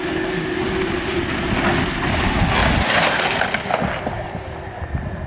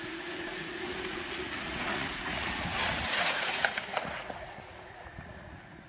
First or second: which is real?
first